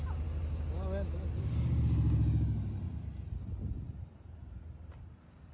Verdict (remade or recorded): recorded